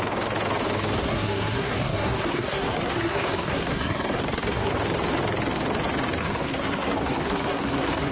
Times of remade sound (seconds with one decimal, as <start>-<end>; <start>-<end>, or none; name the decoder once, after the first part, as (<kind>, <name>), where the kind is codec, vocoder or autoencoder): 1.0-4.7 (codec, SNAC); 6.2-8.1